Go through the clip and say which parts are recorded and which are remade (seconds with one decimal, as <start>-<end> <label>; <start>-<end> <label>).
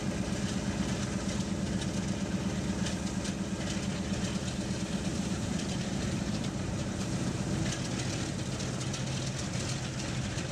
0.0-5.1 recorded; 5.1-7.5 remade; 7.5-10.5 recorded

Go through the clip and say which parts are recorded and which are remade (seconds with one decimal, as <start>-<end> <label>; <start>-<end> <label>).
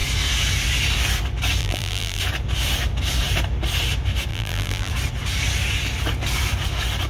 0.0-1.6 recorded; 1.6-2.2 remade; 2.2-4.3 recorded; 4.3-4.9 remade; 4.9-7.1 recorded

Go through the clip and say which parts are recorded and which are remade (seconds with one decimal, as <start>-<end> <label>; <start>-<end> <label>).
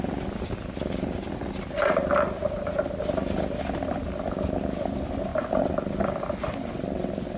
0.0-7.4 recorded